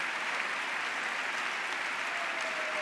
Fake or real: real